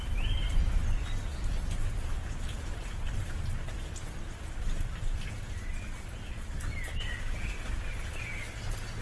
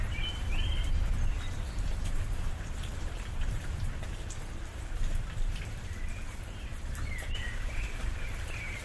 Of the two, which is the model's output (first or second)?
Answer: second